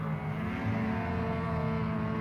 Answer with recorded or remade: recorded